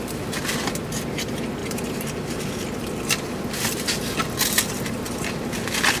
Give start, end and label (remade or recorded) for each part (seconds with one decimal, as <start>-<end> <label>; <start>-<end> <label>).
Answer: 0.0-1.6 recorded; 1.6-2.4 remade; 2.4-6.0 recorded